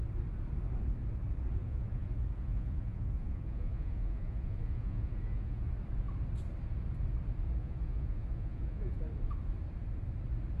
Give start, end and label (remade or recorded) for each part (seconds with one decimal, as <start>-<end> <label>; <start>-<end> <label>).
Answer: 0.0-1.6 recorded; 1.6-5.7 remade; 5.7-7.6 recorded; 7.6-9.0 remade; 9.0-10.6 recorded